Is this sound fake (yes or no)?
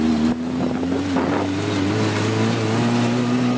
no